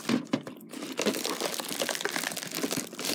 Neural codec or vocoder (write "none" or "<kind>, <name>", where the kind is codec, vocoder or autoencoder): none